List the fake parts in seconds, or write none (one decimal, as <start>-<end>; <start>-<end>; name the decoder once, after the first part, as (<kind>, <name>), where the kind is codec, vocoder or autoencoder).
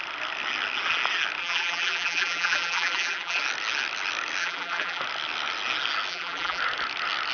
1.4-3.4 (vocoder, BigVGAN v2); 4.4-5.0; 6.1-6.6